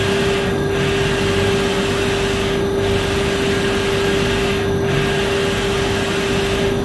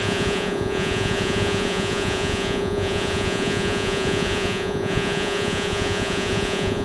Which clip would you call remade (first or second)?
second